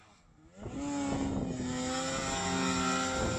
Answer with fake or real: real